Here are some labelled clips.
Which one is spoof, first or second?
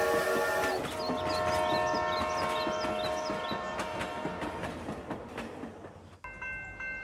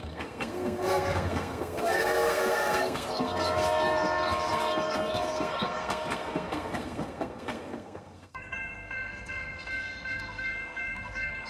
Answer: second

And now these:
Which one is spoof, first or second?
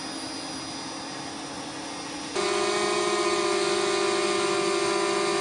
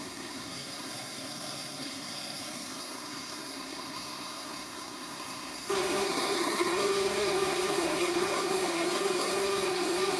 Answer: second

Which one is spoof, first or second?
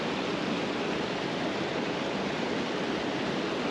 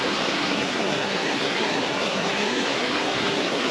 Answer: second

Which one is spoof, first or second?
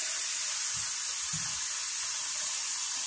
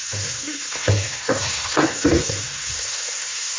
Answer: second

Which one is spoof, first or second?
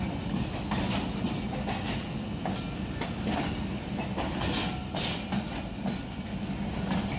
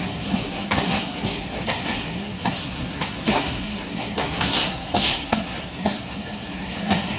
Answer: second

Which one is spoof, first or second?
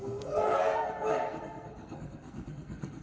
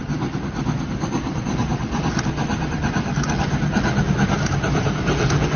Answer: first